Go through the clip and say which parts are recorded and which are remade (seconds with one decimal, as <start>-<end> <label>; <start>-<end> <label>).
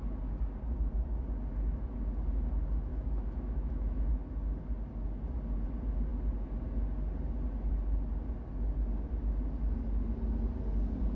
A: 0.0-2.9 recorded; 2.9-4.1 remade; 4.1-11.2 recorded